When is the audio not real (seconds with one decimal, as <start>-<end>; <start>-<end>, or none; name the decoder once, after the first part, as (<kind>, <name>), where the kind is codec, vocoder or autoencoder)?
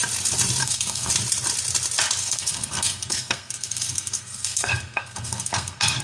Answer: 0.6-1.1 (codec, SNAC); 2.2-6.0